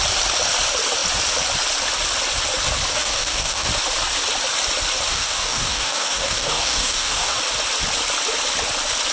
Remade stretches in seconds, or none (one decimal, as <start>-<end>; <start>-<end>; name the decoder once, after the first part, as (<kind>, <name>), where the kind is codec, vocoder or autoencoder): 2.9-3.7 (codec, DAC); 5.1-7.4